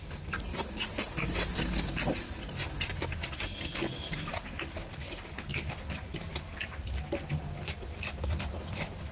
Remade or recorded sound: recorded